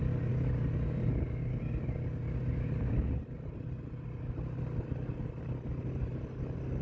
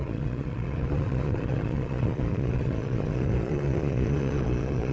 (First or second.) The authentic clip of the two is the first